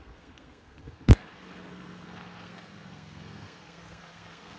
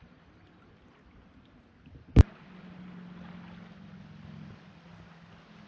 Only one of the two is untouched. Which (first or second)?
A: second